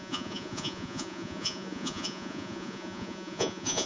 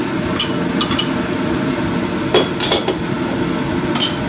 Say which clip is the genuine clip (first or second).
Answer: second